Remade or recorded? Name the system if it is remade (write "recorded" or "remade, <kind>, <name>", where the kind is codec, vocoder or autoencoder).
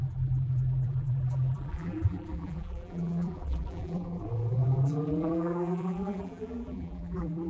remade, vocoder, BigVGAN v2